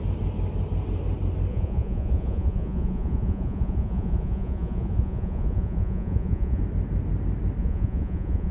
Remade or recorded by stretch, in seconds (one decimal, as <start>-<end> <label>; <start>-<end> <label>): 0.0-1.5 recorded; 1.5-6.6 remade; 6.6-7.6 recorded; 7.6-8.5 remade